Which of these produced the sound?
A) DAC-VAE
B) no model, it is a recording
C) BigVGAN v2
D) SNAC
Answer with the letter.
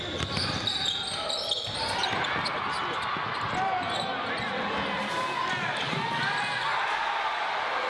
B